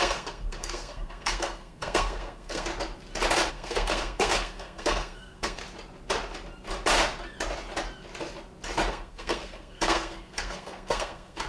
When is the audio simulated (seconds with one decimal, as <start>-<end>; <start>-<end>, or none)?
0.0-2.7; 3.5-5.6; 8.9-11.5